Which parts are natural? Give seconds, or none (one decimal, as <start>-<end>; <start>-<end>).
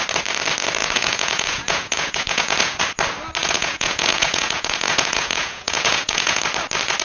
0.0-0.8; 2.8-3.4; 6.4-7.0